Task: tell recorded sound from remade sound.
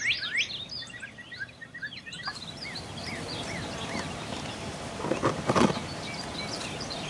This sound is recorded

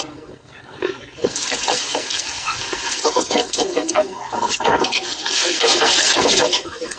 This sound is remade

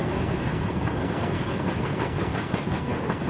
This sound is remade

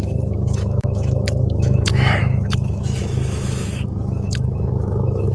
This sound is remade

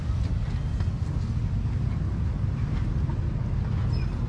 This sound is recorded